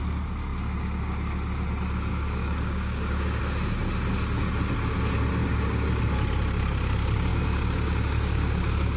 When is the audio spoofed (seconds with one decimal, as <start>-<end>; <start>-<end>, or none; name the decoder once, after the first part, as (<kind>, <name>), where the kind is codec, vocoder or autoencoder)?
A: 2.1-3.4 (codec, DAC); 5.4-6.0; 7.3-9.0